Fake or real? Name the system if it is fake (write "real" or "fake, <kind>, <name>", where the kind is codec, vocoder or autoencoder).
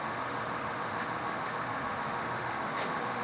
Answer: fake, autoencoder, DAC-VAE